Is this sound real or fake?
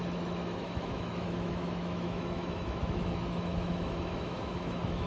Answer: fake